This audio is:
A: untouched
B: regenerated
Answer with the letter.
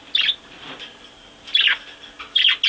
A